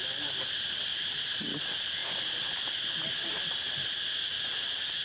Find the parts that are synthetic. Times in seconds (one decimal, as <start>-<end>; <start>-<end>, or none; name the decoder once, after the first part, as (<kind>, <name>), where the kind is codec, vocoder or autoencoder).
0.9-1.6 (vocoder, BigVGAN v2)